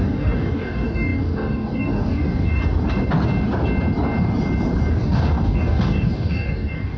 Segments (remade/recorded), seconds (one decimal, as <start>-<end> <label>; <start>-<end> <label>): 0.0-2.6 remade; 2.6-4.9 recorded; 4.9-7.0 remade